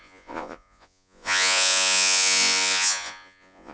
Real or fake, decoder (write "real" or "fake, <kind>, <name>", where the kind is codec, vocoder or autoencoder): fake, vocoder, Vocos